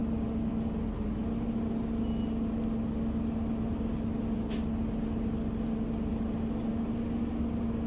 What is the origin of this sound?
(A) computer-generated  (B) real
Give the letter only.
B